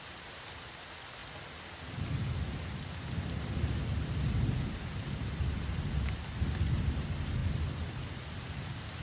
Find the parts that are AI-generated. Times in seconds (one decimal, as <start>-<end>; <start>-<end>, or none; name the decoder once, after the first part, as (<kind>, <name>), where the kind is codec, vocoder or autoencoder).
none